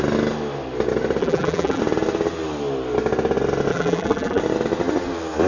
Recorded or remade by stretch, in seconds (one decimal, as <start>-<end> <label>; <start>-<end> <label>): 0.0-1.2 recorded; 1.2-1.8 remade; 1.8-3.7 recorded; 3.7-4.4 remade; 4.4-5.5 recorded